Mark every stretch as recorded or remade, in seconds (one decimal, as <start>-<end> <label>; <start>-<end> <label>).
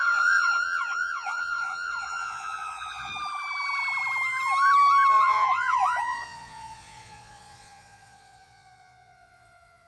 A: 0.0-3.1 remade; 3.1-5.2 recorded; 5.2-9.9 remade